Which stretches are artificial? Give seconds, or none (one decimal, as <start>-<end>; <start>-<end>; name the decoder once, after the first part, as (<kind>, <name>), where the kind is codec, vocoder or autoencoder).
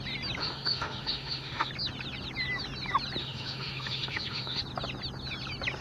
0.4-1.7 (autoencoder, DAC-VAE); 3.2-4.6